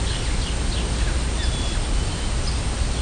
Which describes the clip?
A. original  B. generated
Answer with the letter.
A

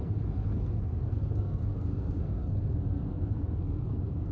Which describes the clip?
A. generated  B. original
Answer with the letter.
A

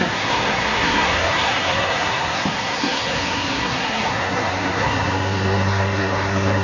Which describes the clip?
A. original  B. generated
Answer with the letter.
B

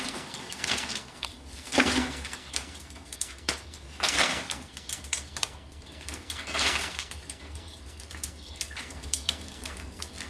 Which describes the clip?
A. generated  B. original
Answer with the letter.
A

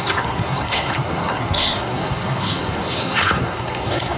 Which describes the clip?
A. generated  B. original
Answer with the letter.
A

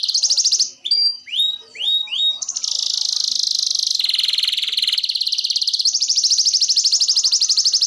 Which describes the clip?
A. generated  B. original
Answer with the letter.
B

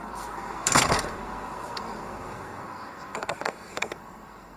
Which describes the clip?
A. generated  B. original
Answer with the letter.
A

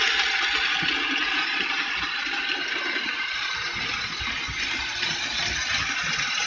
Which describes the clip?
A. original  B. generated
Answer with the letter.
A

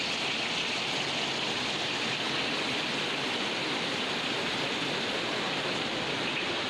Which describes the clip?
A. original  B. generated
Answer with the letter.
A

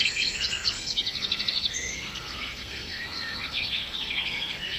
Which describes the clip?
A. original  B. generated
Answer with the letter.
B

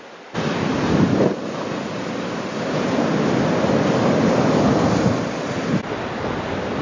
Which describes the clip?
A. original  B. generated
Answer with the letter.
A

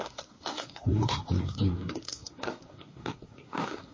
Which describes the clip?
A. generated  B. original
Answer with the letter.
A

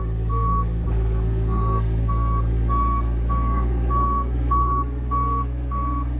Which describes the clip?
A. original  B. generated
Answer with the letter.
B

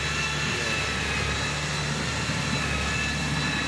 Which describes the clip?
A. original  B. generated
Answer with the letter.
A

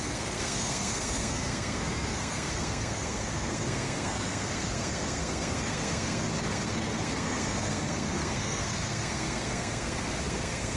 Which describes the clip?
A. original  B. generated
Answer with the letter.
B